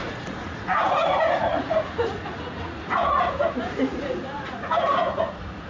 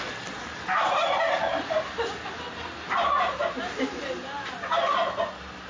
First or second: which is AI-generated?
first